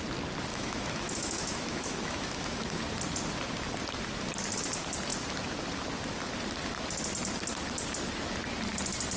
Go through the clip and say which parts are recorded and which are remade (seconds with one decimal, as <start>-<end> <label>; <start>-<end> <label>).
0.0-0.5 recorded; 0.5-2.8 remade; 2.8-9.2 recorded